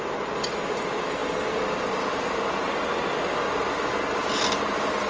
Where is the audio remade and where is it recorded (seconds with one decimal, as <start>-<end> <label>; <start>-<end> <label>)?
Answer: 0.0-5.1 recorded